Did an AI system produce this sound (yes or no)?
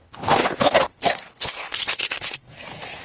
yes